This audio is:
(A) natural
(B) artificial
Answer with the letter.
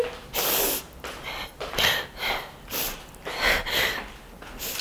A